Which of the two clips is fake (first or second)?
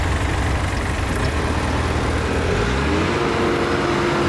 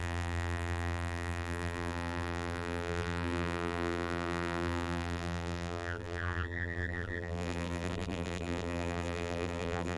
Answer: second